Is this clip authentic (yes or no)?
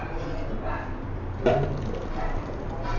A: yes